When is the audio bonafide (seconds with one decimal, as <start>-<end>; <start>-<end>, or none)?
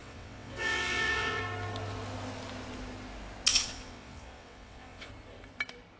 1.4-3.5; 5.1-6.0